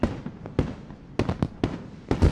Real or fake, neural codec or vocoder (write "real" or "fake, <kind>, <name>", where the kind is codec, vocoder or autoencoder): real